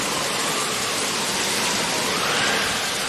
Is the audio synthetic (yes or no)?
yes